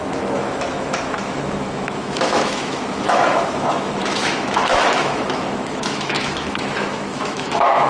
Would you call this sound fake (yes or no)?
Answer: yes